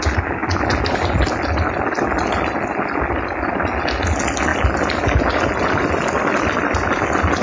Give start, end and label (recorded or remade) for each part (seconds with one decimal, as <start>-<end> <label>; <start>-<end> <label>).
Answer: 0.0-7.4 recorded